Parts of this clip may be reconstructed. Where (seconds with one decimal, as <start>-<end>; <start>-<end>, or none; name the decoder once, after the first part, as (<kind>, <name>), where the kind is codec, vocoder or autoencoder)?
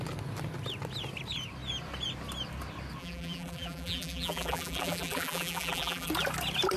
3.0-6.1 (vocoder, BigVGAN v2)